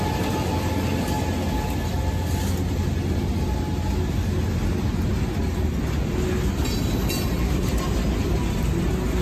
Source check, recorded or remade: recorded